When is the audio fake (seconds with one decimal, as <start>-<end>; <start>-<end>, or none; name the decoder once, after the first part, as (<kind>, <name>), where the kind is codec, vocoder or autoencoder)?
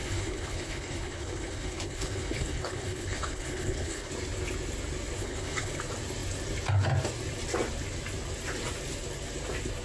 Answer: 0.0-4.1 (codec, HILCodec); 5.2-5.8